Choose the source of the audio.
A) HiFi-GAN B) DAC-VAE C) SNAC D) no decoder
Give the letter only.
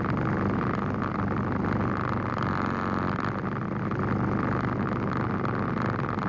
D